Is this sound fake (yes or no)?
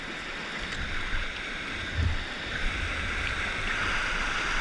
no